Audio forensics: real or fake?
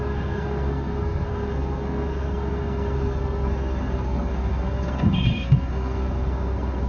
fake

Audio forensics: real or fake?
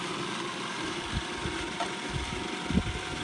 fake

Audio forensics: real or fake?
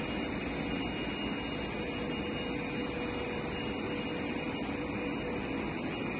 real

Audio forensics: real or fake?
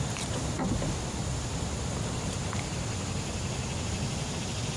real